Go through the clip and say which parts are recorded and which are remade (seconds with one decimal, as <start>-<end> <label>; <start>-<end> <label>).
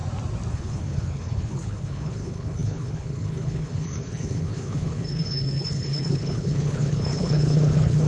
0.0-0.5 recorded; 0.5-8.1 remade